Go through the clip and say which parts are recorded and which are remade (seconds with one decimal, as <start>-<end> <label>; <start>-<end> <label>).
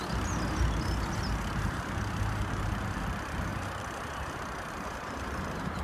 0.0-1.5 recorded; 1.5-2.0 remade; 2.0-2.5 recorded; 2.5-3.5 remade; 3.5-4.7 recorded; 4.7-5.8 remade